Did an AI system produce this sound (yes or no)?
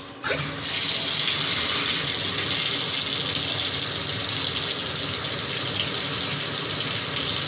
no